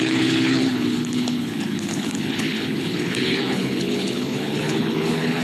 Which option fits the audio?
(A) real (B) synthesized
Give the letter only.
B